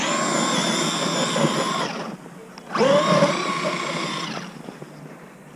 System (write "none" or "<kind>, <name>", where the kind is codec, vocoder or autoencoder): none